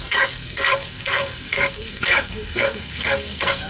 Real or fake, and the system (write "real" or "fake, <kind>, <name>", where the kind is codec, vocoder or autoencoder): fake, codec, SNAC